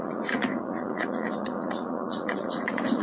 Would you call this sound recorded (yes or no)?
no